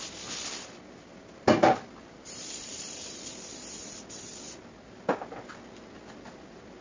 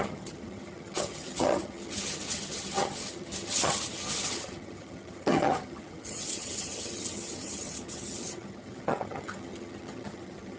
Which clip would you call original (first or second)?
first